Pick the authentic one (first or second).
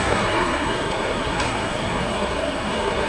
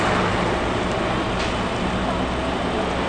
second